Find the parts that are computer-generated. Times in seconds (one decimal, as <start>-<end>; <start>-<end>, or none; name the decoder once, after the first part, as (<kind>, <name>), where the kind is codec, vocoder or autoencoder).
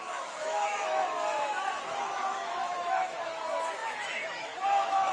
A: 0.0-5.1 (autoencoder, DAC-VAE)